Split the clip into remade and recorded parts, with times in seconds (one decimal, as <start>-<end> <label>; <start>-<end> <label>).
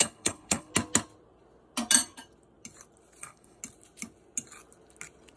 0.0-0.7 remade; 0.7-3.2 recorded; 3.2-3.6 remade; 3.6-5.4 recorded